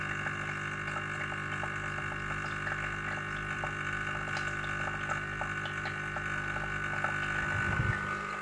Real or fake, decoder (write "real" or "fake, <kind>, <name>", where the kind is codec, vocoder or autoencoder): real